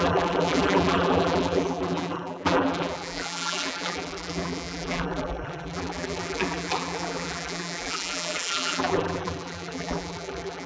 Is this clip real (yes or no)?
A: no